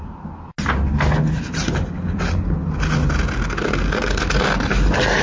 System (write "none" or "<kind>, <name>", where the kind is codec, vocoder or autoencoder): none